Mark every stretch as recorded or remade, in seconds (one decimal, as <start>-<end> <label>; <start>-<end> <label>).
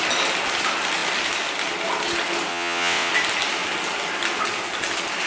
0.0-2.5 recorded; 2.5-3.1 remade; 3.1-5.3 recorded